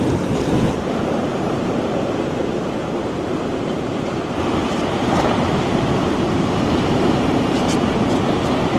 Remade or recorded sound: remade